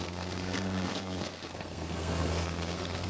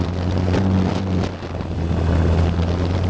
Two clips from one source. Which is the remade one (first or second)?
first